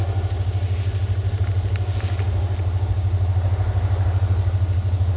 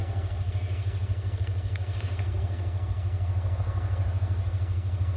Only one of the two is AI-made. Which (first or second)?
second